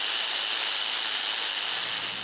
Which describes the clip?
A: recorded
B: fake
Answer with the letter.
A